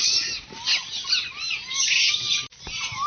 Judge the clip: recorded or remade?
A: recorded